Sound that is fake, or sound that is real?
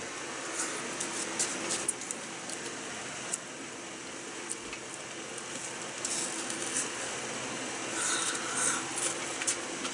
real